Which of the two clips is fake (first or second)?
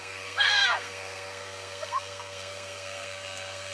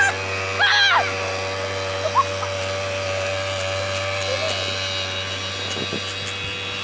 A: first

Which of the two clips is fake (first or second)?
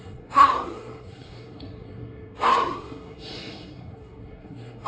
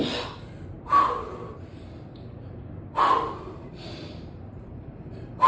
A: first